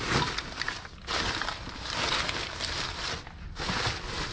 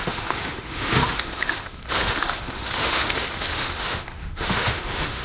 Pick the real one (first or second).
first